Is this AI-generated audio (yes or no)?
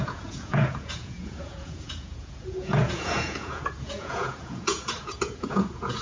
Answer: yes